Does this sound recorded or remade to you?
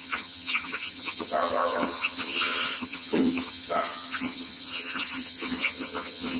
remade